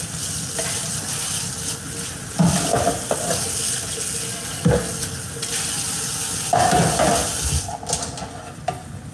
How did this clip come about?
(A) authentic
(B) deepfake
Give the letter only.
A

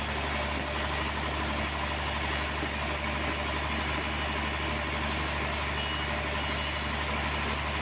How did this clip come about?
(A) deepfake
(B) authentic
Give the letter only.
B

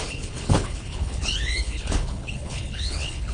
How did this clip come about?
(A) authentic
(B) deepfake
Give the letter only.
B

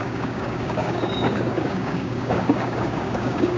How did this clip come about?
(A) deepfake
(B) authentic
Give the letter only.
A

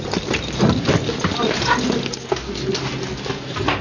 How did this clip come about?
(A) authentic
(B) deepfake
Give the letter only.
A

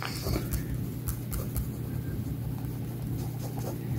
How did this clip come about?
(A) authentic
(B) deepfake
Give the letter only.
A